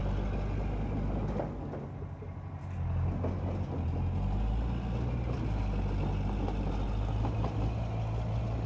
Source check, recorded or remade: recorded